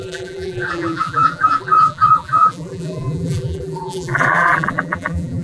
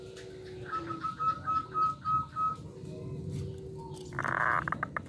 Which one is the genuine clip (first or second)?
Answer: second